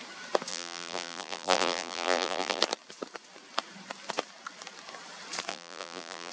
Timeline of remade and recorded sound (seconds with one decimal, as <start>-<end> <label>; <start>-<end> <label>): 0.0-0.5 recorded; 0.5-2.6 remade; 2.6-5.5 recorded; 5.5-6.3 remade